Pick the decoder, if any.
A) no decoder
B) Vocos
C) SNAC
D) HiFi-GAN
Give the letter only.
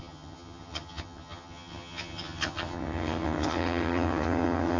D